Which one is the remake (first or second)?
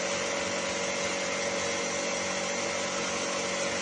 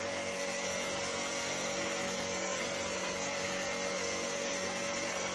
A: second